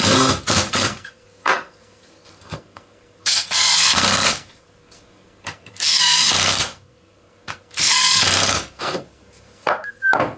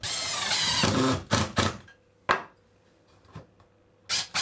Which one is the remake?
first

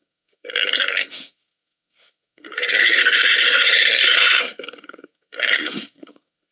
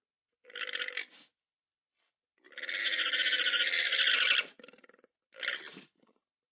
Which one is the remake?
first